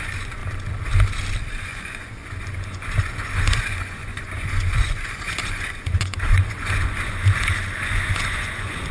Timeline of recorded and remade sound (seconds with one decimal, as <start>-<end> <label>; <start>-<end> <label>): 0.0-0.4 remade; 0.4-1.5 recorded; 1.5-8.9 remade